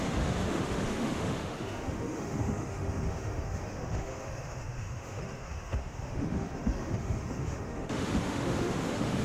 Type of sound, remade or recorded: remade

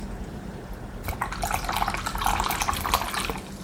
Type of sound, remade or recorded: recorded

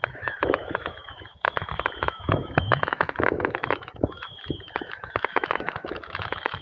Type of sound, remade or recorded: remade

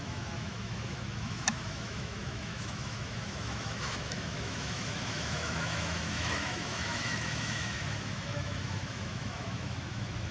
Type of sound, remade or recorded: remade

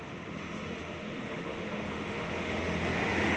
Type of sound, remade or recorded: remade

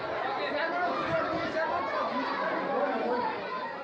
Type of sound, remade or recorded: recorded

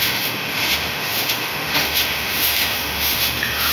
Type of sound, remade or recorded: remade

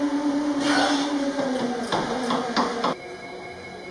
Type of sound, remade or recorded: recorded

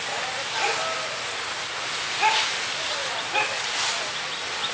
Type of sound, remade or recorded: recorded